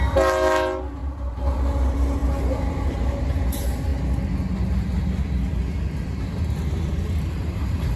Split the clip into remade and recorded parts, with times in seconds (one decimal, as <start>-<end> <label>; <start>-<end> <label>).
0.0-1.0 recorded; 1.0-1.6 remade; 1.6-8.0 recorded